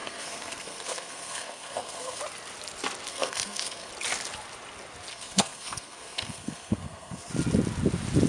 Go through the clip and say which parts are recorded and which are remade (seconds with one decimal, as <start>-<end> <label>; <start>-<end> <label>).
0.0-2.2 remade; 2.2-3.1 recorded; 3.1-3.9 remade; 3.9-5.1 recorded; 5.1-7.3 remade; 7.3-8.3 recorded